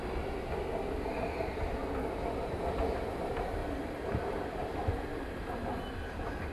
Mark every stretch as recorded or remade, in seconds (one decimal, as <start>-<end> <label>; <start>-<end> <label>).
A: 0.0-3.6 recorded; 3.6-5.3 remade; 5.3-6.5 recorded